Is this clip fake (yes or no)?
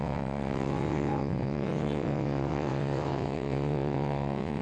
yes